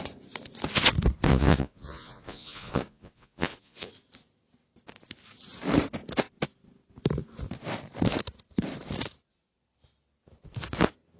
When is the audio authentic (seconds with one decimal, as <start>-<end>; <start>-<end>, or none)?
0.0-1.3; 3.9-11.2